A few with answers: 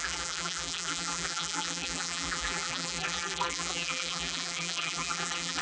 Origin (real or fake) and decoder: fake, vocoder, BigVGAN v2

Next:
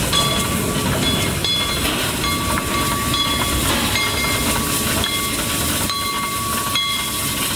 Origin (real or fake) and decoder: real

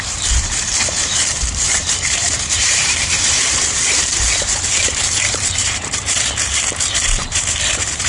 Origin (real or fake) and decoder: fake, vocoder, BigVGAN v2